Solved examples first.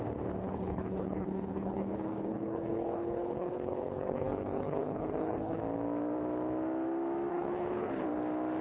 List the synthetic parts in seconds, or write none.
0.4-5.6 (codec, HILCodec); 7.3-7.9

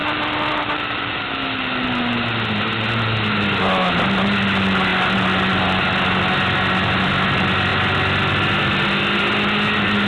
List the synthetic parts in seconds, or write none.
none